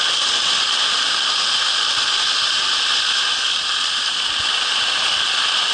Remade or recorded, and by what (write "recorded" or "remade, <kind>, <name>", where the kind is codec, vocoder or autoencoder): recorded